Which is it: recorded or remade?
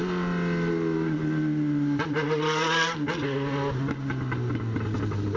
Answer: recorded